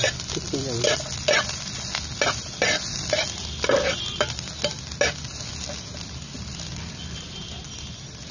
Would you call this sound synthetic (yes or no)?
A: no